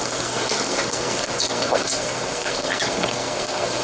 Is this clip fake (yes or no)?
yes